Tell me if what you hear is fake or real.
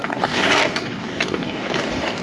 fake